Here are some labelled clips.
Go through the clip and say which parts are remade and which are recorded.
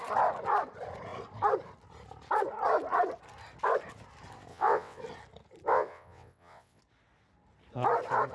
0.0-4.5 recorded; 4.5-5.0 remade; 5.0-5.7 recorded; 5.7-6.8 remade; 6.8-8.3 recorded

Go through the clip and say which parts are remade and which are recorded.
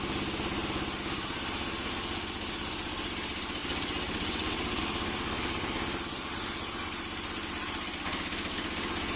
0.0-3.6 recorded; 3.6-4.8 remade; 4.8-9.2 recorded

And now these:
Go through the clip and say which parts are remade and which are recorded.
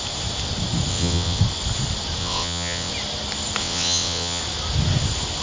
0.0-0.9 recorded; 0.9-1.4 remade; 1.4-2.2 recorded; 2.2-2.9 remade; 2.9-3.6 recorded; 3.6-4.4 remade; 4.4-5.4 recorded